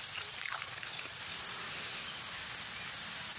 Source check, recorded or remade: recorded